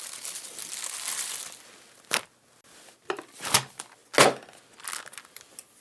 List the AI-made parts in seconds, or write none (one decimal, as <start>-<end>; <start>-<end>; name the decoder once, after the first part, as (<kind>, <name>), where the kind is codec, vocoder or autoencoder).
none